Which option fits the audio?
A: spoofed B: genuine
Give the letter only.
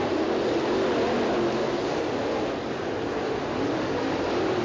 B